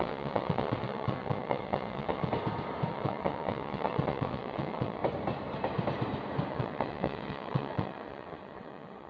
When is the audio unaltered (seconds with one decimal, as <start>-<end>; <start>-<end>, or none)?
2.3-2.9; 5.0-6.5